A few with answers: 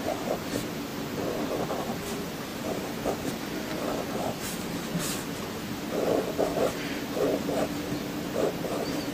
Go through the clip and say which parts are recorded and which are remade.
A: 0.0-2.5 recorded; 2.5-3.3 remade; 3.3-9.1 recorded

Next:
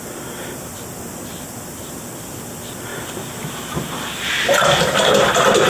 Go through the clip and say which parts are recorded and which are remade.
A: 0.0-5.7 recorded

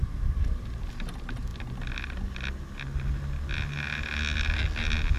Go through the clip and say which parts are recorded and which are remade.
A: 0.0-0.9 remade; 0.9-5.2 recorded

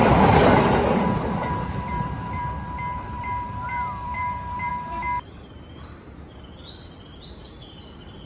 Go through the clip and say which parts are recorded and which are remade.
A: 0.0-4.7 remade; 4.7-8.3 recorded

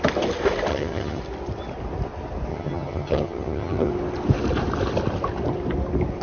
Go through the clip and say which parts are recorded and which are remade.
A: 0.0-0.7 recorded; 0.7-1.2 remade; 1.2-2.5 recorded; 2.5-3.9 remade; 3.9-6.2 recorded